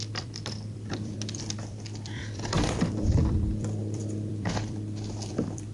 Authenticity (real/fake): fake